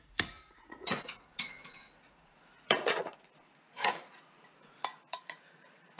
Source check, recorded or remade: remade